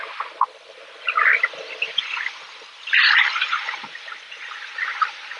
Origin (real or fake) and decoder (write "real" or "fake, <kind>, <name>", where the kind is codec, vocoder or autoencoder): real